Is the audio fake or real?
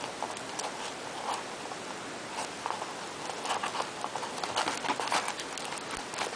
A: real